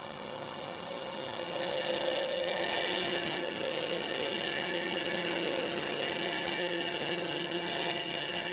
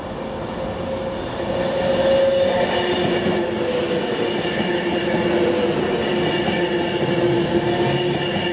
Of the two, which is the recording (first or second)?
second